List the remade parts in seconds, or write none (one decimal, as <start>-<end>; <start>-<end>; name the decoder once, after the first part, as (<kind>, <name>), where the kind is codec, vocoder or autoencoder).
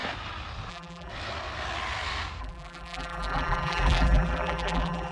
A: 0.7-1.1 (vocoder, BigVGAN v2); 2.4-5.1